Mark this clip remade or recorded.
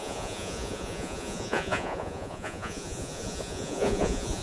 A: remade